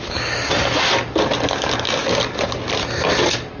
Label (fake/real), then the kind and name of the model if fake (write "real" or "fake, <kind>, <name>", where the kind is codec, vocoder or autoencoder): real